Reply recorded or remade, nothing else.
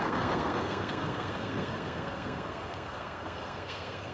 remade